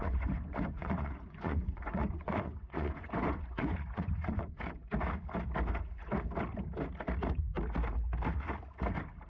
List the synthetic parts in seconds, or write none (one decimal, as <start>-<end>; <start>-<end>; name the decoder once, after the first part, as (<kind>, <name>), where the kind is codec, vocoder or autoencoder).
0.0-4.8 (vocoder, Vocos)